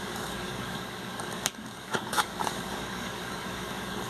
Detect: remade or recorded remade